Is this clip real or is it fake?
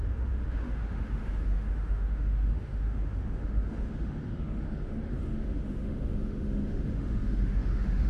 fake